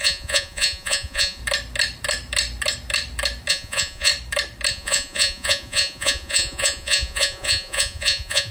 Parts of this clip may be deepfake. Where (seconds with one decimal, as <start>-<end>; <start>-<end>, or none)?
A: 0.0-1.4; 3.5-4.1; 4.7-8.5